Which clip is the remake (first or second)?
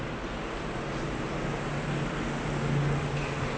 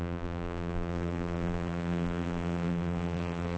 second